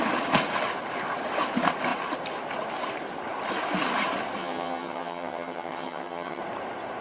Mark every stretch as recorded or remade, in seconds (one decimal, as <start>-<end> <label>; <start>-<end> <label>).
0.0-4.4 recorded; 4.4-6.4 remade; 6.4-7.0 recorded